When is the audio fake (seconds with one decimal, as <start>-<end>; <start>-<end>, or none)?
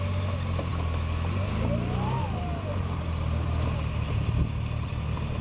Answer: none